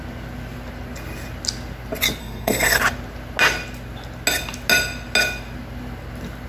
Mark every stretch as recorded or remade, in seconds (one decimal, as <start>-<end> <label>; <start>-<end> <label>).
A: 0.0-2.2 recorded; 2.2-2.8 remade; 2.8-6.5 recorded